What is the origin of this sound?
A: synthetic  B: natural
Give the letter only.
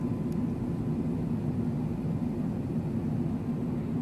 B